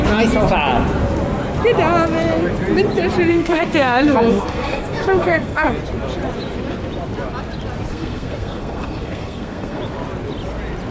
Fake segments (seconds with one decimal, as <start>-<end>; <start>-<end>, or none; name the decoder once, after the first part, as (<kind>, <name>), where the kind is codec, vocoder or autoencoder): 3.3-5.7 (codec, SNAC); 7.9-9.8